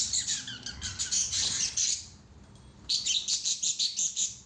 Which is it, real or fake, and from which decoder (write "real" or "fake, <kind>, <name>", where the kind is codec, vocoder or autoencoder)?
fake, vocoder, BigVGAN v2